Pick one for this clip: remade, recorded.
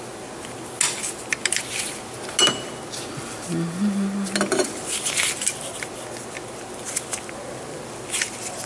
recorded